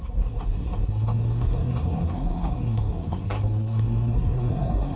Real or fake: fake